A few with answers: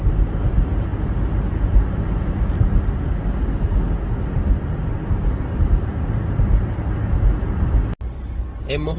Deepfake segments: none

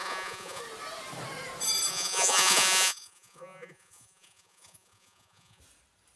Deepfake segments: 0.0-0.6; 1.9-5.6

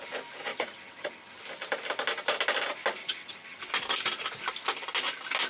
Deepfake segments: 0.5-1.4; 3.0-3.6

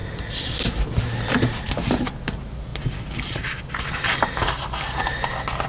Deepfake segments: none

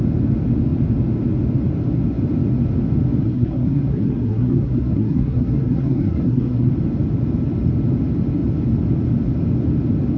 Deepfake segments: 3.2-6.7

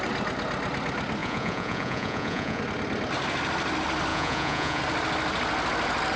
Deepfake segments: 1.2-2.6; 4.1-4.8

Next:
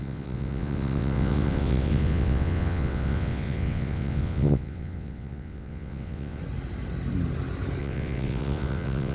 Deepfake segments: 0.0-6.4; 7.8-9.1

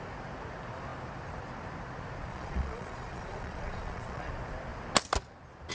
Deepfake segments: 2.3-4.3